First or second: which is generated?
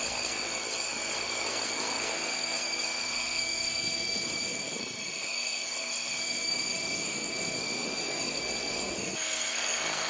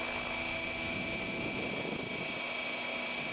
first